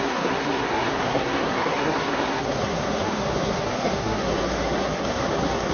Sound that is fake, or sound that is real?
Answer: fake